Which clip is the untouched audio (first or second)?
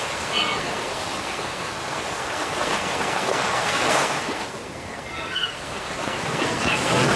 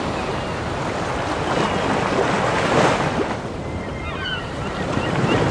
second